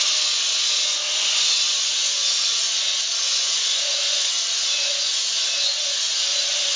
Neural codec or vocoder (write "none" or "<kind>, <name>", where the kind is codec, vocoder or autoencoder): vocoder, Vocos